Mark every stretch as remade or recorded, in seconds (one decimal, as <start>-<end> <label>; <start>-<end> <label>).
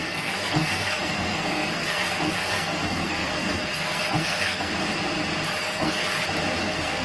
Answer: 0.0-4.7 remade; 4.7-5.6 recorded; 5.6-6.0 remade; 6.0-6.6 recorded; 6.6-7.0 remade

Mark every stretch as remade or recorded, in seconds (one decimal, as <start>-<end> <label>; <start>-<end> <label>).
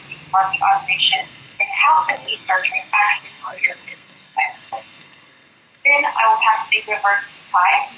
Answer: 0.0-1.0 recorded; 1.0-5.8 remade; 5.8-8.0 recorded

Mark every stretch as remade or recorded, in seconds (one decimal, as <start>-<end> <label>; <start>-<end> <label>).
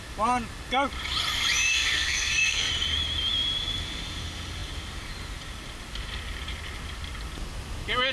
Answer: 0.0-1.7 recorded; 1.7-2.7 remade; 2.7-8.1 recorded